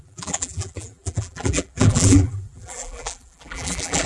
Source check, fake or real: fake